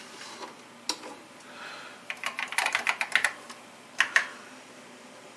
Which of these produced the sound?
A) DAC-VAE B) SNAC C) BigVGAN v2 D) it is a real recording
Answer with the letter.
D